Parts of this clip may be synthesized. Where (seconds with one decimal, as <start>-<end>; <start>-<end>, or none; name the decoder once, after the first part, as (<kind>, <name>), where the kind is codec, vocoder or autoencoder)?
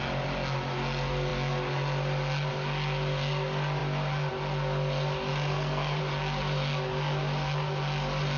5.3-6.0 (codec, SNAC)